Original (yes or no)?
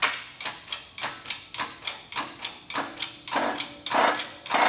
yes